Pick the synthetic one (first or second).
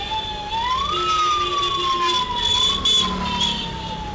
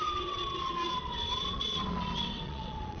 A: second